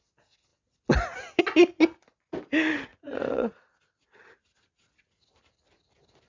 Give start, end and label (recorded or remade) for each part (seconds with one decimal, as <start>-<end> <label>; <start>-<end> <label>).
0.0-2.9 recorded; 2.9-3.7 remade; 3.7-6.3 recorded